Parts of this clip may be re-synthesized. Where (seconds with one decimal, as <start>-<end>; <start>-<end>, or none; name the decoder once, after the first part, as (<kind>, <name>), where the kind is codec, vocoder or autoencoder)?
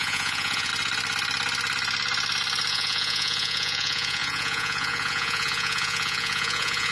0.0-0.7 (vocoder, Vocos); 2.7-6.9